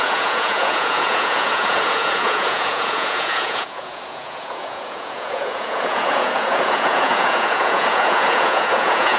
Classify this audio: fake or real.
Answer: fake